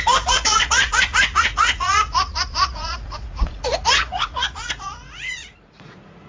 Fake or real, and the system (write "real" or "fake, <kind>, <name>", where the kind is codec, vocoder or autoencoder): fake, vocoder, Vocos